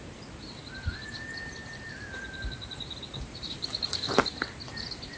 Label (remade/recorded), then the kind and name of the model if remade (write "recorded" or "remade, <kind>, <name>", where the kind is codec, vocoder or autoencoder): recorded